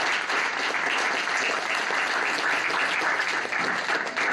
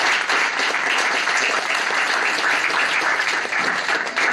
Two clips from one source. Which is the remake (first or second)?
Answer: second